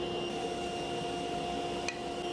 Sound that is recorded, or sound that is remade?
recorded